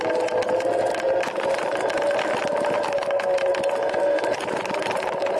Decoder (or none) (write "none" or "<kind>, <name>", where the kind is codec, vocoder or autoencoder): none